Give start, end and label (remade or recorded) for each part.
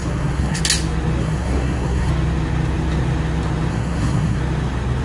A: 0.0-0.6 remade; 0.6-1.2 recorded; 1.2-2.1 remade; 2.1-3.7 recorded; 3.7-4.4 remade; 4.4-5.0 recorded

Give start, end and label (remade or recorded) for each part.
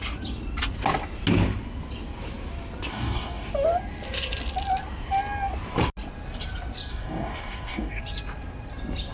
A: 0.0-2.9 recorded; 2.9-3.5 remade; 3.5-6.9 recorded; 6.9-8.0 remade; 8.0-9.1 recorded